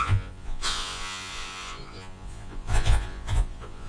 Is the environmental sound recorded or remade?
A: remade